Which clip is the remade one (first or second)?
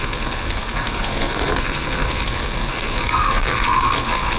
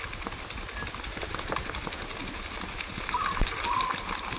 first